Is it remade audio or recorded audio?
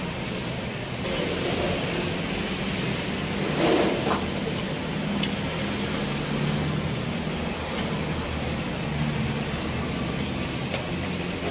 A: recorded